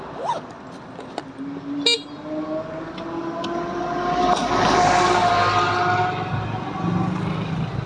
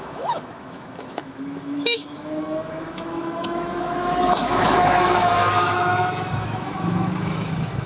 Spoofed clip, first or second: second